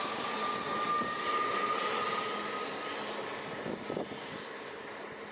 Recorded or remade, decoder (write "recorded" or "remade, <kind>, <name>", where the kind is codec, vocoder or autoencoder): recorded